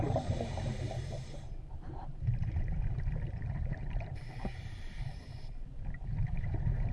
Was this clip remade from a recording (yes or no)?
yes